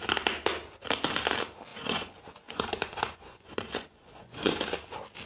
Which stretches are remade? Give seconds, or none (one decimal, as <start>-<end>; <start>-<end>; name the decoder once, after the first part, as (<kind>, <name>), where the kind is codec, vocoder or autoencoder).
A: 1.7-4.6 (vocoder, Vocos)